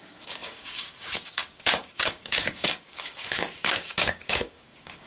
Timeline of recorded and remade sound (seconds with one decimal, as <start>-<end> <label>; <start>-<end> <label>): 0.0-5.1 remade